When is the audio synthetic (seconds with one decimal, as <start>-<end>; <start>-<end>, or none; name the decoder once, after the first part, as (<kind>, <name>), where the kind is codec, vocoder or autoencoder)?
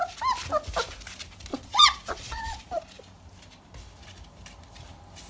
1.5-2.6 (vocoder, Vocos)